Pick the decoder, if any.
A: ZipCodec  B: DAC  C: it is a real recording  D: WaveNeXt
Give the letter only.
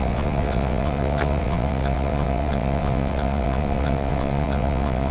D